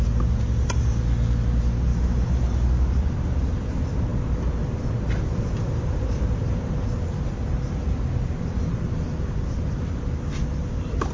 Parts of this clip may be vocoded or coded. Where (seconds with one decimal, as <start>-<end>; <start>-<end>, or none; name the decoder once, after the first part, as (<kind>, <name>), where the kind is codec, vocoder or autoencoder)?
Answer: none